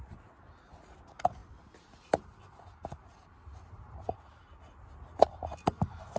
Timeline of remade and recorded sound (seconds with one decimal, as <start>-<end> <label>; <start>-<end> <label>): 0.0-6.2 recorded